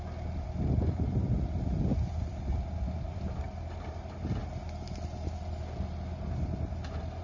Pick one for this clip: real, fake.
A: real